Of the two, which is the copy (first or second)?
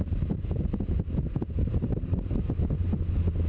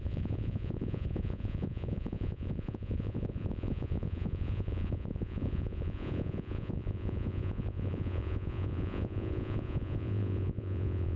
second